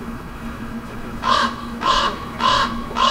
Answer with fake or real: fake